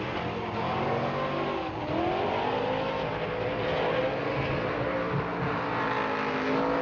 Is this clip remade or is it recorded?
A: recorded